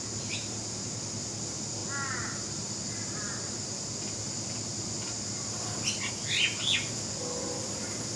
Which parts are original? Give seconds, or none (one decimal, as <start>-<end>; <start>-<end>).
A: 0.0-8.2